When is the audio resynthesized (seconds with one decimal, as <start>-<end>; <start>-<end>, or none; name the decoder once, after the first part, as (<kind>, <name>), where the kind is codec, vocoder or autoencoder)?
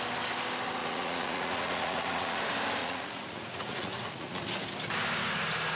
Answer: 0.8-2.4 (vocoder, Vocos); 2.8-4.4